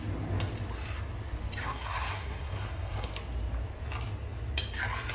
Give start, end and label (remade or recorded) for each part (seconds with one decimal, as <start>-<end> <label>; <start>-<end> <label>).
0.0-1.6 recorded; 1.6-3.1 remade; 3.1-5.1 recorded